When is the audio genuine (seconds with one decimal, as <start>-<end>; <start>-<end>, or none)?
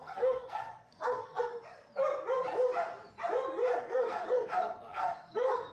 1.5-3.8